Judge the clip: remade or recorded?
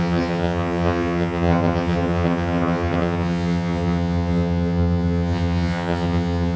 remade